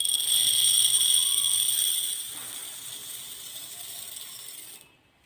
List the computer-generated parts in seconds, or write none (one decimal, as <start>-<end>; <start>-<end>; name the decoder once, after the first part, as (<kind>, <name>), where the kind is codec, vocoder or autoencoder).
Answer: none